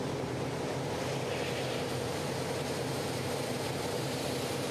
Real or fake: fake